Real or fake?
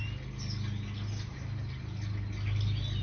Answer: real